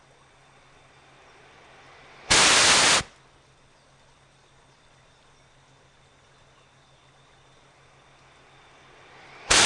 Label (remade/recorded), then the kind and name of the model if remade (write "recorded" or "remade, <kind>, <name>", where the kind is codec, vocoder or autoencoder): recorded